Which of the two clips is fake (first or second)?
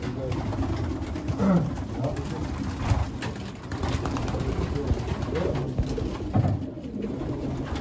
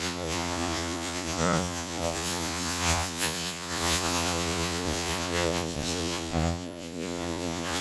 second